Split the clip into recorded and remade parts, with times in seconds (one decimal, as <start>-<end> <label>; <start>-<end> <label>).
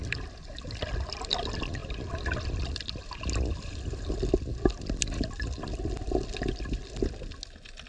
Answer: 0.0-7.9 recorded